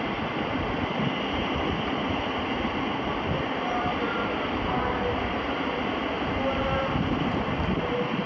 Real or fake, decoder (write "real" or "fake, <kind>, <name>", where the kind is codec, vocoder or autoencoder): real